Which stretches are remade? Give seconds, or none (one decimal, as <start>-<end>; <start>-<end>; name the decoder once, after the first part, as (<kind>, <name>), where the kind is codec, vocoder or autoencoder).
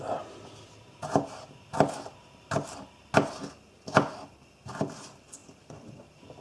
none